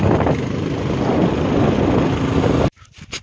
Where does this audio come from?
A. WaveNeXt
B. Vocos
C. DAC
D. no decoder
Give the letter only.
D